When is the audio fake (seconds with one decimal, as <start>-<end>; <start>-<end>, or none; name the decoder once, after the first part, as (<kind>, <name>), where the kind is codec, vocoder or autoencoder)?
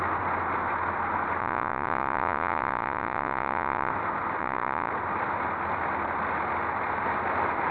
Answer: 1.4-3.9 (vocoder, Vocos); 4.4-4.9